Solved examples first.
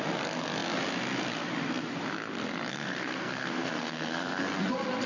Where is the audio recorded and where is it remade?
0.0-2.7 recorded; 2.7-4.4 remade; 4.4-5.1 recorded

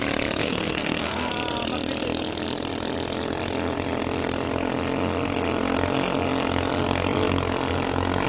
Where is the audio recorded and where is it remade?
0.0-0.4 recorded; 0.4-1.3 remade; 1.3-8.3 recorded

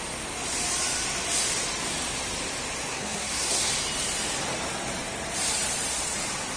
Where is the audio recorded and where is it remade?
0.0-2.9 recorded; 2.9-3.7 remade; 3.7-6.6 recorded